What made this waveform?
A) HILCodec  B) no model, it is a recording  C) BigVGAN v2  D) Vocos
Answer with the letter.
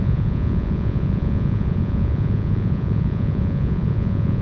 D